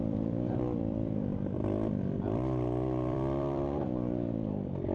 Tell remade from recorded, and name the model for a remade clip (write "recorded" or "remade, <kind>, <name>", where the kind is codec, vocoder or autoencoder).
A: remade, vocoder, BigVGAN v2